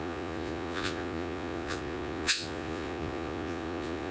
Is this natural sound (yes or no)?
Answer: no